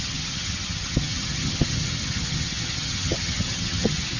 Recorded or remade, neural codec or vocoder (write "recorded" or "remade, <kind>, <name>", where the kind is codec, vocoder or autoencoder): remade, vocoder, HiFi-GAN